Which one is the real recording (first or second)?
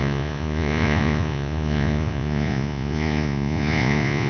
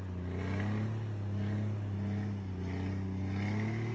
second